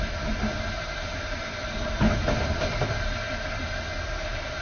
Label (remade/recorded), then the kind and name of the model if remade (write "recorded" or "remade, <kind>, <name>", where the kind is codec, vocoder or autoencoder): recorded